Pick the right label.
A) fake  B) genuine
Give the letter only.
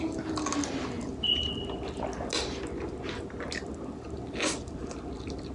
B